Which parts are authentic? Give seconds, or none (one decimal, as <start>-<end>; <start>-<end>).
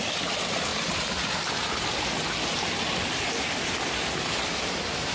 0.0-5.1